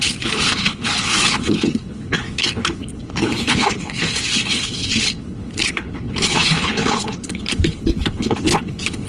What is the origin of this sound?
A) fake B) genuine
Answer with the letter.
A